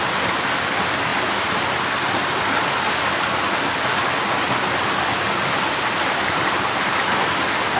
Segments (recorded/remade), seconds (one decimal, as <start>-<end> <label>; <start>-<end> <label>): 0.0-6.0 recorded; 6.0-7.0 remade; 7.0-7.8 recorded